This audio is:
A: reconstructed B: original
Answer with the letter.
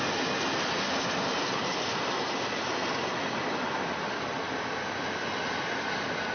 B